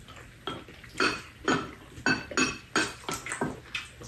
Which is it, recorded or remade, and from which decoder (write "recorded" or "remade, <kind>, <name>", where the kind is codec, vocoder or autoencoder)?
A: recorded